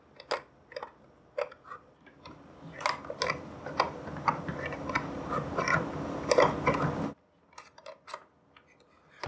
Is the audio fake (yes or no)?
no